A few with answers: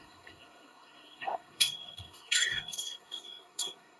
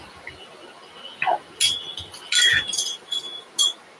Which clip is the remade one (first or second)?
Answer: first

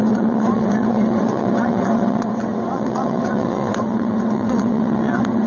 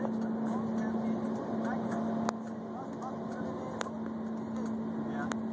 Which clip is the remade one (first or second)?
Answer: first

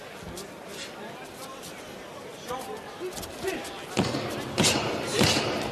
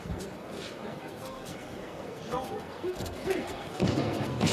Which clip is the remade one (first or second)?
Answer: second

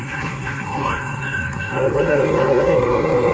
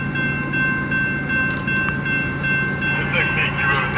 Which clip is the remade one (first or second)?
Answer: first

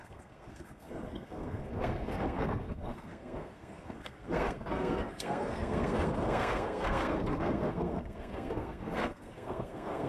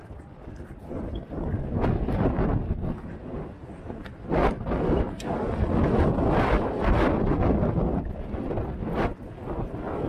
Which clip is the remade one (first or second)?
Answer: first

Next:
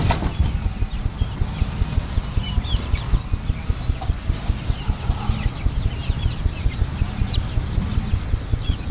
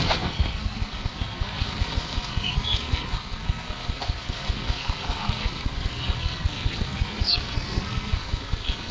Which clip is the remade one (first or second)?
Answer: second